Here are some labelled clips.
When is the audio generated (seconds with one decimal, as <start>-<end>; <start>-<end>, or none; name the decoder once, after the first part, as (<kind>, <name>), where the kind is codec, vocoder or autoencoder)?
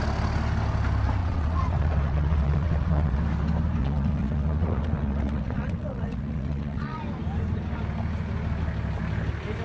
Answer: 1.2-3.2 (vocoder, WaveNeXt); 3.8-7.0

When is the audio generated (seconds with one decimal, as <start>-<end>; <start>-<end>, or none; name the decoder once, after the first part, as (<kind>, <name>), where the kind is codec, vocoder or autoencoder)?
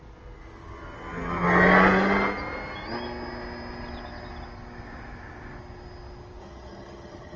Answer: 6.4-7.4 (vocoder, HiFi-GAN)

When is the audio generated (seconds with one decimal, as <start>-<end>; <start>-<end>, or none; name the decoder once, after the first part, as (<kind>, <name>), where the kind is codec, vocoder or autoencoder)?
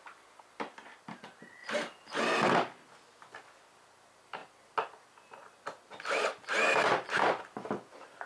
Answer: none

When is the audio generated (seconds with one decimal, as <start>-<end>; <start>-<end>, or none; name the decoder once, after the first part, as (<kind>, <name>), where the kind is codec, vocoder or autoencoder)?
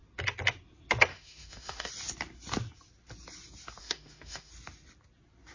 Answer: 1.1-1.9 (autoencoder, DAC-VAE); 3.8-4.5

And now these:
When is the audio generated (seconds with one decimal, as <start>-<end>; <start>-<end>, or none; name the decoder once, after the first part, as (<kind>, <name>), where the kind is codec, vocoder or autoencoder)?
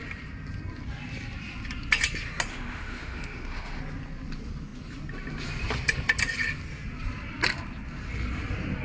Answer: 2.5-3.8 (autoencoder, DAC-VAE)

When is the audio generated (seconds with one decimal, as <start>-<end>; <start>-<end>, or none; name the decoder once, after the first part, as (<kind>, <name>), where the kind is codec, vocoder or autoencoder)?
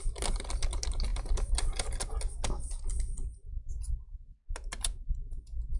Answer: none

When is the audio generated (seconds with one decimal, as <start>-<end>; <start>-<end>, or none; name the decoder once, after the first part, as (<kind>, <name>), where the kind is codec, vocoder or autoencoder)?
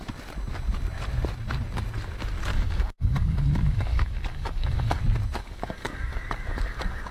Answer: 2.5-5.0 (codec, DAC); 5.4-7.1